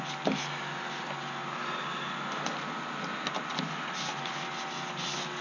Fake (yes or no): no